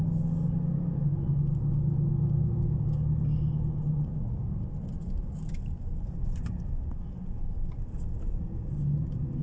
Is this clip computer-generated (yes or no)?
no